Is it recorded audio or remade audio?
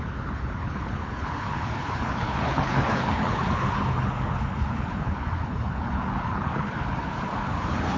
remade